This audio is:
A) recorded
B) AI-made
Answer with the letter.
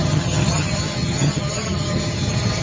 B